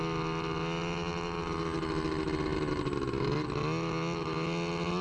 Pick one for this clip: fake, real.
real